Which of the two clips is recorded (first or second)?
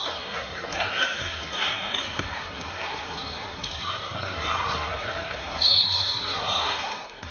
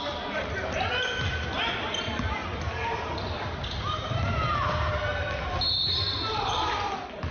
second